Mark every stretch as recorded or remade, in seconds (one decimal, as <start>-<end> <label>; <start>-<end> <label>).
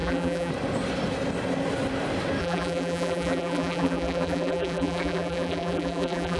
0.0-0.5 remade; 0.5-2.4 recorded; 2.4-6.4 remade